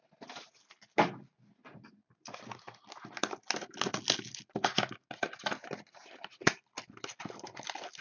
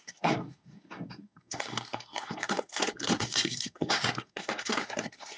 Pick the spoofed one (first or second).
second